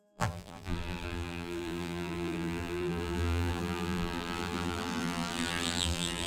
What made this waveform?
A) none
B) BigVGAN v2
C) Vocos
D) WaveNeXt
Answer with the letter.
B